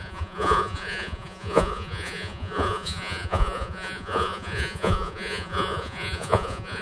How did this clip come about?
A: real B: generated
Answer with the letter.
B